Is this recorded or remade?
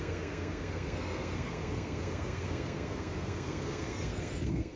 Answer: remade